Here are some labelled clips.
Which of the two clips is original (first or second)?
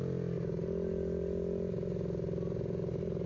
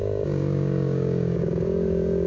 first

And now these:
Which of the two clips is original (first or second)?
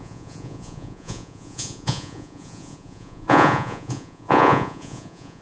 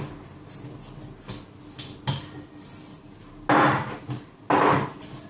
second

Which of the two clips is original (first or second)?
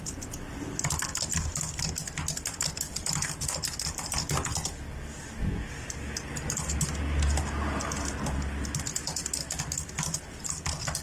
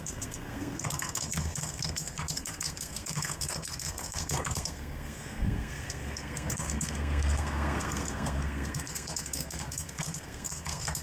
first